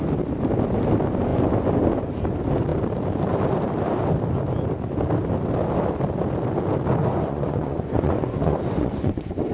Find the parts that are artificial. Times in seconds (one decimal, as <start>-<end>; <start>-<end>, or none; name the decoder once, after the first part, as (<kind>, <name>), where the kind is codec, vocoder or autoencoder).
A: 7.0-9.5 (vocoder, Vocos)